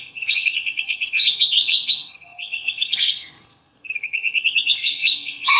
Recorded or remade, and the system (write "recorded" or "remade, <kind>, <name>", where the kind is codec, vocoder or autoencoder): remade, codec, SNAC